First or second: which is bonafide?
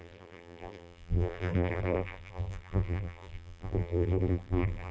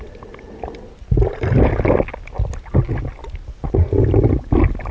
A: second